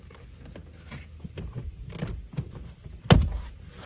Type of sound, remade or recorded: recorded